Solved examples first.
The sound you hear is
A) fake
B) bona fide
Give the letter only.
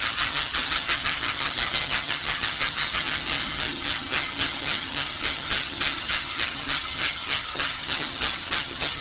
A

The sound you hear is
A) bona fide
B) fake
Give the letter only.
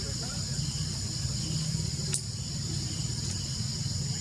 A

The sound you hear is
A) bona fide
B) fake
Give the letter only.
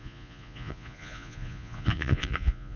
B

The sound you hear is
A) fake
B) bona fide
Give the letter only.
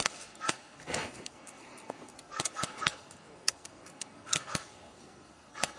A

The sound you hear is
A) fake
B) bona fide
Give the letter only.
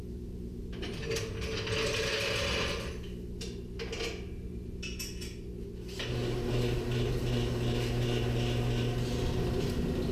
B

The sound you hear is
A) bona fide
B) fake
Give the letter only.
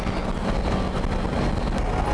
A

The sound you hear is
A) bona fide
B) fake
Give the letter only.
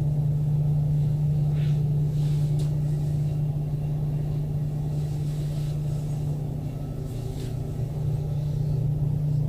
A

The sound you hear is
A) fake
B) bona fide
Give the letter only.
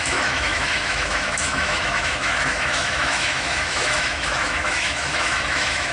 A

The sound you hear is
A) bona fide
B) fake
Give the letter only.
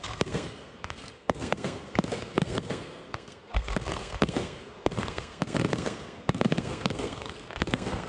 B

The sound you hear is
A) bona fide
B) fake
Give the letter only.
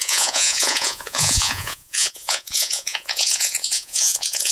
B